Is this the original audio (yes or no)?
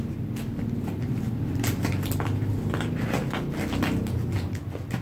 yes